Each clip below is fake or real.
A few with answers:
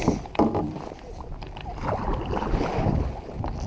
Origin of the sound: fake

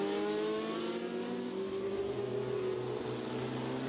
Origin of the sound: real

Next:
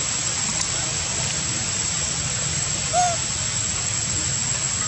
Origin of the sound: real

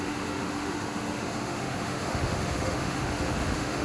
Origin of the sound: fake